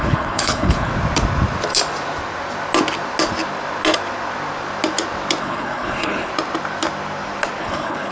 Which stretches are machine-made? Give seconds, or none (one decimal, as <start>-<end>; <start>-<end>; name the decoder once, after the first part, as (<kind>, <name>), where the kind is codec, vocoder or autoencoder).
0.0-0.9 (codec, HILCodec); 5.4-6.3; 7.6-8.1